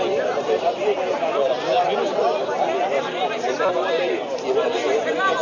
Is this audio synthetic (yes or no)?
no